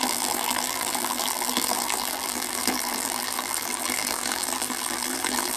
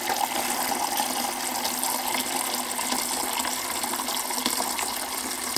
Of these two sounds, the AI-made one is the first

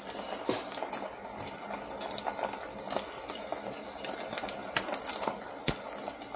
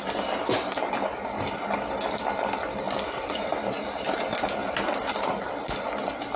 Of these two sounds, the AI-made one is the second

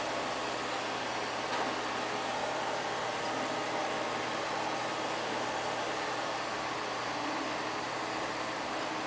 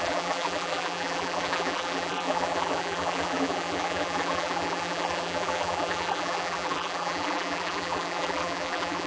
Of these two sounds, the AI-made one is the second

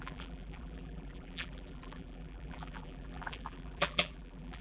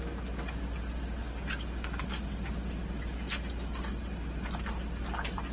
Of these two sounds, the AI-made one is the first